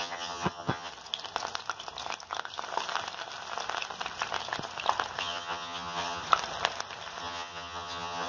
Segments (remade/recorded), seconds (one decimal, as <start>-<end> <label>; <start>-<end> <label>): 0.0-0.9 remade; 0.9-5.2 recorded; 5.2-6.2 remade; 6.2-7.2 recorded; 7.2-8.3 remade